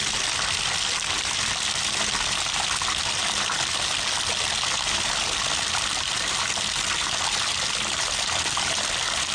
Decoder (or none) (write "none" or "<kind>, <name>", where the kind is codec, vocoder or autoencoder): none